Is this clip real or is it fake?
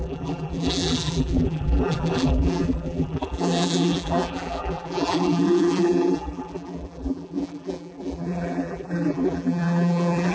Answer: fake